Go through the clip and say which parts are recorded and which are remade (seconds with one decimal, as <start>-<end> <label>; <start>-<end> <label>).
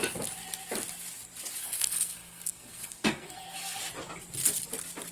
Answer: 0.0-1.6 recorded; 1.6-3.8 remade; 3.8-5.1 recorded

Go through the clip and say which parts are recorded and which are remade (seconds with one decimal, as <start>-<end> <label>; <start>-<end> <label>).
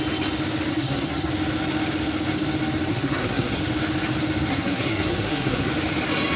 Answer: 0.0-0.7 recorded; 0.7-1.3 remade; 1.3-2.9 recorded; 2.9-3.6 remade; 3.6-4.5 recorded; 4.5-5.7 remade; 5.7-6.4 recorded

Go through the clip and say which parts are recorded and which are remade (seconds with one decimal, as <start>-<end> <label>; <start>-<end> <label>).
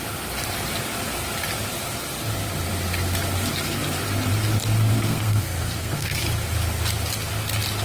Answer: 0.0-4.9 recorded; 4.9-6.2 remade; 6.2-7.8 recorded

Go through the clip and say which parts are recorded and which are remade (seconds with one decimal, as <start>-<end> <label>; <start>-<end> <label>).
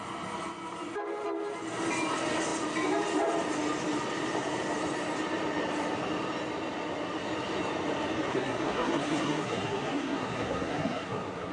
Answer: 0.0-8.3 recorded; 8.3-11.5 remade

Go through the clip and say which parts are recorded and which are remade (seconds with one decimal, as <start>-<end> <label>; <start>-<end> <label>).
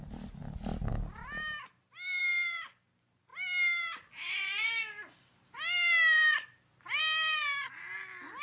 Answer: 0.0-8.4 recorded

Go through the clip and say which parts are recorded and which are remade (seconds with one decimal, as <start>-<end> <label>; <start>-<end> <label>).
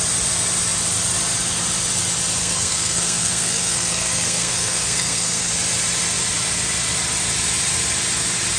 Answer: 0.0-2.4 recorded; 2.4-5.5 remade; 5.5-8.6 recorded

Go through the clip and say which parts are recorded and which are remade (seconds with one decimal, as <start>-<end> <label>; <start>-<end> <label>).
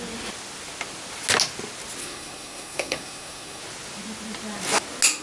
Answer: 0.0-2.0 recorded; 2.0-3.6 remade; 3.6-5.2 recorded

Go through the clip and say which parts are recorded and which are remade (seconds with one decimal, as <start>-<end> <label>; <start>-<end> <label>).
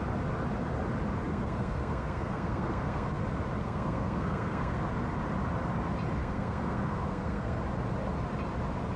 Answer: 0.0-1.3 recorded; 1.3-3.2 remade; 3.2-3.6 recorded; 3.6-4.8 remade; 4.8-6.2 recorded; 6.2-7.6 remade; 7.6-9.0 recorded